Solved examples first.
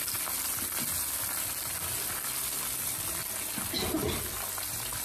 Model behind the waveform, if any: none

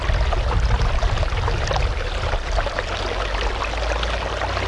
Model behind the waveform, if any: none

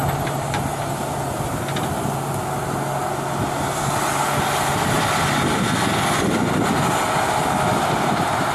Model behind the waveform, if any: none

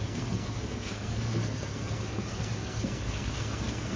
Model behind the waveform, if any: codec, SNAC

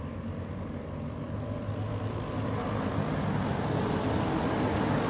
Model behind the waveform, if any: none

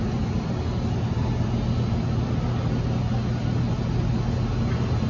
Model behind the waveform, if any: none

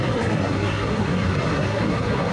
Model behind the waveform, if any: codec, SNAC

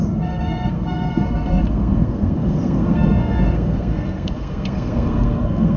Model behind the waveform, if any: codec, SNAC